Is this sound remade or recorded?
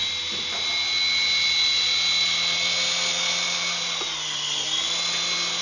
recorded